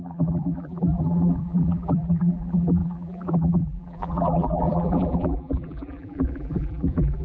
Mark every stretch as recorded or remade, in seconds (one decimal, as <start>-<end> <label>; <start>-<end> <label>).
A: 0.0-7.2 remade